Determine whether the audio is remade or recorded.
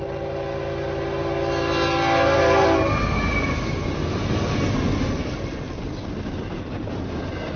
recorded